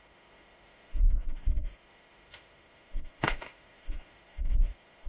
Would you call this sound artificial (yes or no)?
yes